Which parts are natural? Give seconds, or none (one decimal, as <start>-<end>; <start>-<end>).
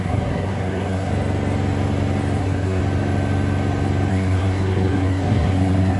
1.1-2.4; 2.8-4.1